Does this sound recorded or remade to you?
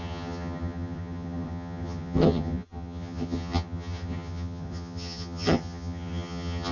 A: remade